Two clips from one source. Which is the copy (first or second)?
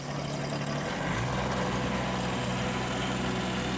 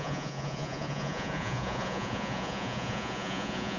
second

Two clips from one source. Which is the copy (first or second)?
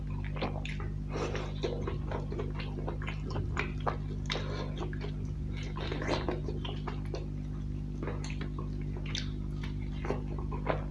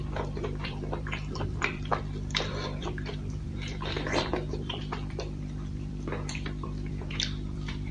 second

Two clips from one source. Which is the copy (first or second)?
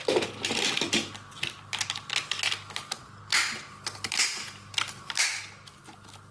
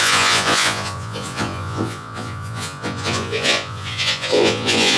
second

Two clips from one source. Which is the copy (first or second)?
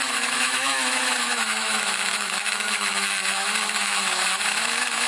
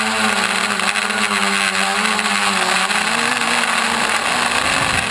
first